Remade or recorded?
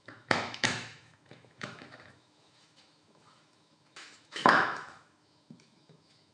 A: remade